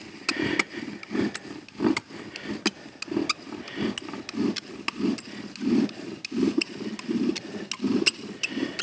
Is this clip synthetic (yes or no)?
no